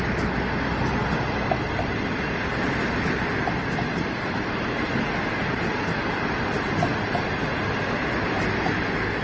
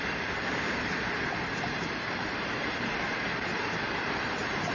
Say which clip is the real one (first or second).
first